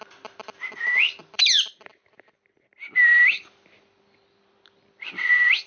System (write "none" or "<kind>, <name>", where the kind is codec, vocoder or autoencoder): vocoder, BigVGAN v2